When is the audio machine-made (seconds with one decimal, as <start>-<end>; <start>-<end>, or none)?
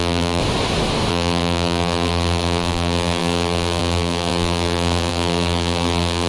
0.0-0.4; 1.1-6.3